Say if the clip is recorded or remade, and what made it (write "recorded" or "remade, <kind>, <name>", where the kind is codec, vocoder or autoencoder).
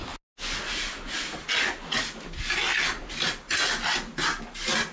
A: recorded